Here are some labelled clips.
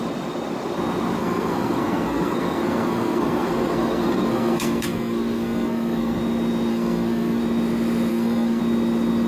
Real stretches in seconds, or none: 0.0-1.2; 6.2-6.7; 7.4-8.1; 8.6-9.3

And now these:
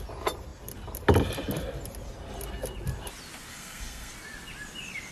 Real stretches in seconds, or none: 0.0-3.5; 4.1-5.1